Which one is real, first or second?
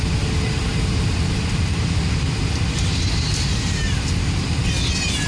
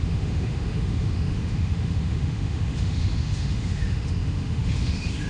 first